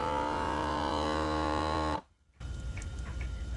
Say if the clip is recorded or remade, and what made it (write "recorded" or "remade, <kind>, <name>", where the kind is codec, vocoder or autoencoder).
remade, vocoder, BigVGAN v2